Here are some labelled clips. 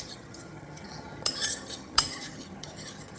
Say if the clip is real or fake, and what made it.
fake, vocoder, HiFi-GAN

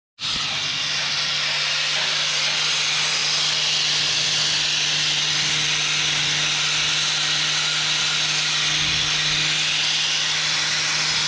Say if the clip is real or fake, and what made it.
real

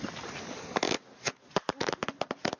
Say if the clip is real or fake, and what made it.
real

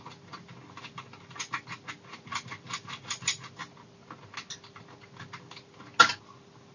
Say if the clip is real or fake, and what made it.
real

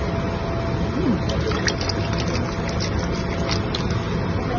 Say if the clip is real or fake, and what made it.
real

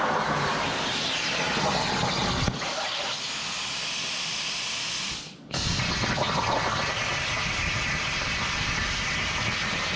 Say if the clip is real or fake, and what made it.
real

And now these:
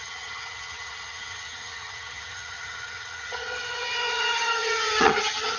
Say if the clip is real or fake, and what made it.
fake, vocoder, HiFi-GAN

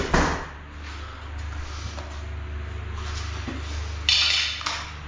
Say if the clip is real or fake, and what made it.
real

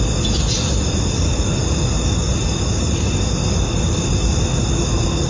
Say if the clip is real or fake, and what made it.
real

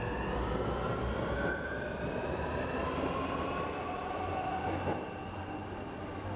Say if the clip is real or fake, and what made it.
real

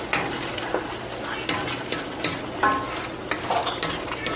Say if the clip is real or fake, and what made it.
real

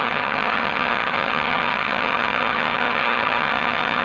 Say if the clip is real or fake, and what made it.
fake, vocoder, HiFi-GAN